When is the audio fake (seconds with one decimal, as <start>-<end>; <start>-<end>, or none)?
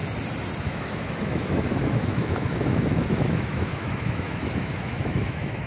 0.6-5.7